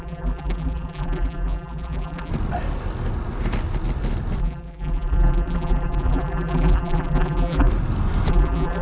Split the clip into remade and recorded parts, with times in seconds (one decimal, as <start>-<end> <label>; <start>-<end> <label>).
0.0-2.3 remade; 2.3-4.4 recorded; 4.4-7.7 remade; 7.7-8.3 recorded; 8.3-8.8 remade